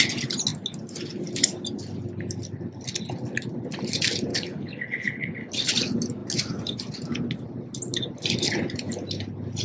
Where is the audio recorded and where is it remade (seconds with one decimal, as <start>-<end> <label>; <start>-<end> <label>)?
0.0-4.3 recorded; 4.3-5.7 remade; 5.7-9.6 recorded